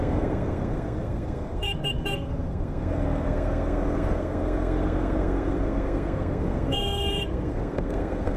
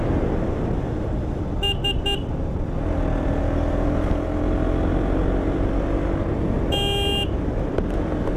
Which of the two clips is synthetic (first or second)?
first